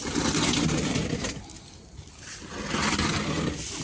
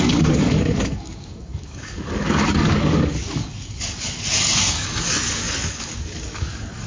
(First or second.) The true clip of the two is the first